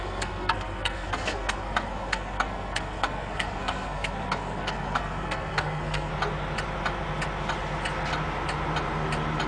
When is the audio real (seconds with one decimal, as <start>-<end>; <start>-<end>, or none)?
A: 6.1-9.5

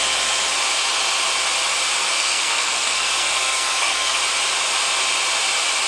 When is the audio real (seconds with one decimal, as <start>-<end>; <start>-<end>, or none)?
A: 0.0-2.0; 4.2-5.9